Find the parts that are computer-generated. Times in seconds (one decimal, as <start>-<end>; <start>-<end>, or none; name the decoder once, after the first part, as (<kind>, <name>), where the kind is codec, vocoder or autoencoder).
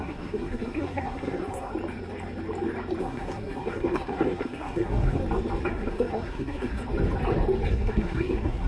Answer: 0.0-1.7 (codec, SNAC); 3.0-5.2; 5.7-6.8; 7.7-8.7